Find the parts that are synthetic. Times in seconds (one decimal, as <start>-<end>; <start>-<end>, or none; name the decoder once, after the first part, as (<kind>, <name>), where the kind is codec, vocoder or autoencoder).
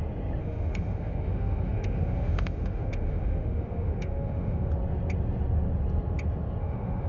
0.4-4.7 (autoencoder, DAC-VAE); 6.6-7.1